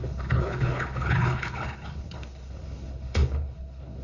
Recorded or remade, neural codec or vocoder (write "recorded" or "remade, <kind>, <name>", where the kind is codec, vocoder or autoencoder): remade, codec, HILCodec